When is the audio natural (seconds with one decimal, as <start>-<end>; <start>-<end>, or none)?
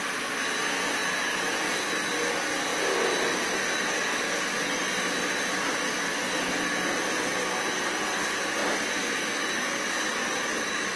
0.0-11.0